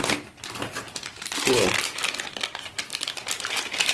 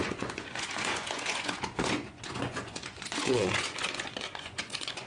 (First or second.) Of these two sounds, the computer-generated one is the second